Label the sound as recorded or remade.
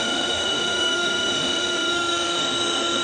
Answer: remade